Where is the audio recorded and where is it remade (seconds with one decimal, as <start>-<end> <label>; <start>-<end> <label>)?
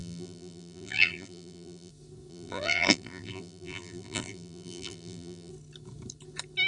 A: 0.0-1.9 remade; 1.9-2.3 recorded; 2.3-5.5 remade; 5.5-6.7 recorded